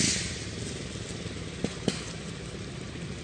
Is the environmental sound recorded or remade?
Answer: recorded